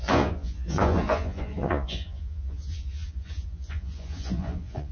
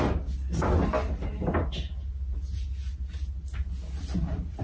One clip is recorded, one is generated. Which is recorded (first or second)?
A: second